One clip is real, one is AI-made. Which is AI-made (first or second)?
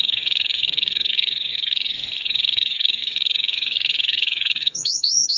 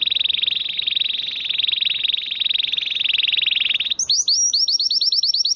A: first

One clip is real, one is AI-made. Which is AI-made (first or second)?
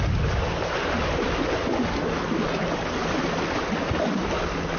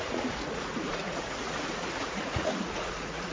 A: second